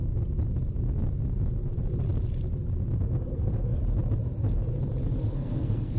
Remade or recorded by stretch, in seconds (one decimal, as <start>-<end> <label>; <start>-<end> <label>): 0.0-3.3 recorded; 3.3-3.8 remade; 3.8-5.3 recorded; 5.3-6.0 remade

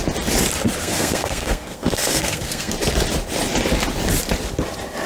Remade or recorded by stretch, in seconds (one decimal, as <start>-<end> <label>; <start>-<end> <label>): 0.0-0.8 recorded; 0.8-2.7 remade; 2.7-5.1 recorded